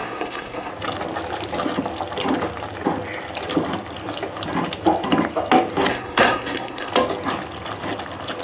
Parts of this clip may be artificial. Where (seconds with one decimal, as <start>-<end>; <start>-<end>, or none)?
0.0-0.7; 5.9-6.9

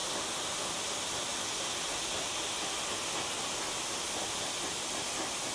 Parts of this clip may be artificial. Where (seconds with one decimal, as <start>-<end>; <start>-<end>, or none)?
none

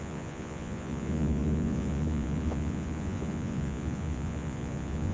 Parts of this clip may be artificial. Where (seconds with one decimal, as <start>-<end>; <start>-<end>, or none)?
0.0-5.1

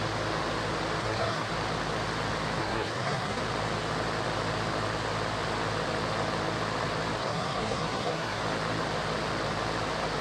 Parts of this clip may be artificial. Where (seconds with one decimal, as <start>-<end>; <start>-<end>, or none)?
1.0-1.5; 2.6-3.4; 7.2-8.4